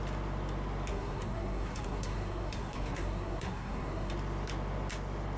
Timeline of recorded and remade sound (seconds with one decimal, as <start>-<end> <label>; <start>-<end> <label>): 0.0-0.9 recorded; 0.9-4.1 remade; 4.1-5.4 recorded